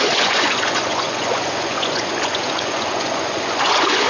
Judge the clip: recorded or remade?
remade